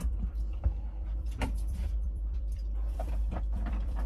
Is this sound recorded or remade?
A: remade